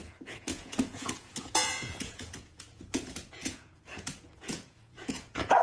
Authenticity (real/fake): fake